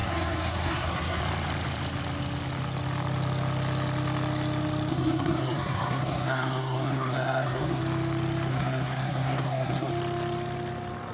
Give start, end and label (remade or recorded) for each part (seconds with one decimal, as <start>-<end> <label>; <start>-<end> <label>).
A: 0.0-1.2 remade; 1.2-4.9 recorded; 4.9-7.8 remade; 7.8-8.5 recorded; 8.5-9.9 remade; 9.9-11.1 recorded